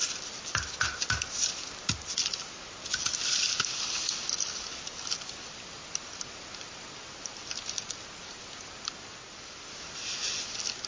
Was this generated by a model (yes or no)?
no